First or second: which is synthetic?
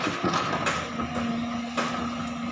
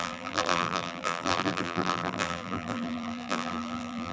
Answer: second